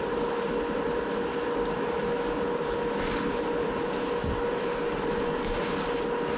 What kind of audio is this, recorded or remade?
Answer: recorded